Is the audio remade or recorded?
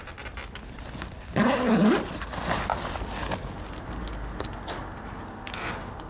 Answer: recorded